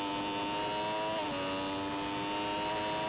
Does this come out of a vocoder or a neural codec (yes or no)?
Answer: no